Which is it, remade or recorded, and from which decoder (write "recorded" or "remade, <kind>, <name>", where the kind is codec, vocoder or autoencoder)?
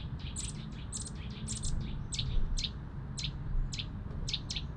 recorded